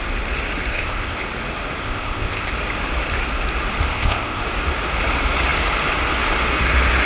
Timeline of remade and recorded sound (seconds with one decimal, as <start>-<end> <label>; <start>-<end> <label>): 0.0-0.7 recorded; 0.7-1.2 remade; 1.2-1.8 recorded; 1.8-2.5 remade; 2.5-3.9 recorded; 3.9-4.4 remade; 4.4-7.1 recorded